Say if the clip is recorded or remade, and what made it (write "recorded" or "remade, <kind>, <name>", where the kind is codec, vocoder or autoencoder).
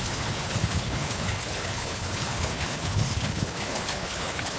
remade, codec, HILCodec